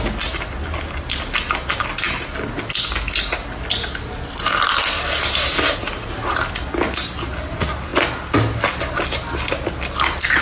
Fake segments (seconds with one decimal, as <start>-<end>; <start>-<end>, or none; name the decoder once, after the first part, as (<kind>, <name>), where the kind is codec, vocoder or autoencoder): none